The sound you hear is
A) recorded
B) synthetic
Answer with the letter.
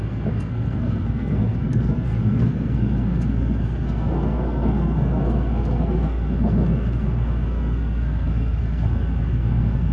B